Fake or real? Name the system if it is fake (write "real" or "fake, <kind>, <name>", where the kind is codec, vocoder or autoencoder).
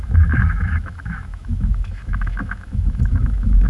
fake, autoencoder, DAC-VAE